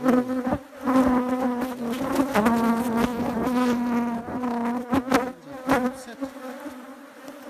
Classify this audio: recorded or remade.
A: recorded